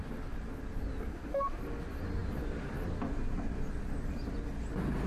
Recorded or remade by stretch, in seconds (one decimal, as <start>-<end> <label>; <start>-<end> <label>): 0.0-1.1 recorded; 1.1-1.6 remade; 1.6-5.1 recorded